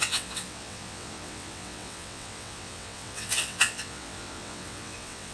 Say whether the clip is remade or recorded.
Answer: remade